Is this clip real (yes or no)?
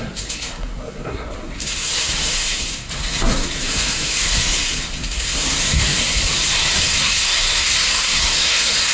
no